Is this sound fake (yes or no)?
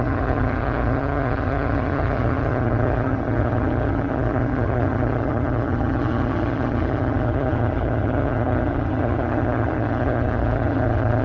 yes